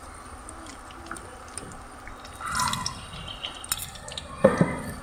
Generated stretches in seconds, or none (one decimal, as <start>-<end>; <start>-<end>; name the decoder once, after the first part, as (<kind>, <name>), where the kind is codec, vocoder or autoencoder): 0.7-3.7 (vocoder, BigVGAN v2)